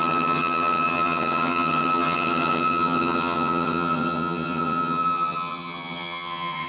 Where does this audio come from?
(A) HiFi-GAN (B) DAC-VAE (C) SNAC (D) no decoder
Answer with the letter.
A